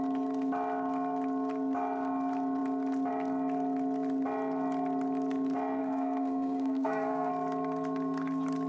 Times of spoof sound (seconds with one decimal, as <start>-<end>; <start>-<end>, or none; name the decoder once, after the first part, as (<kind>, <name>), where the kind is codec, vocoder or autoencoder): 5.8-7.3 (codec, SNAC)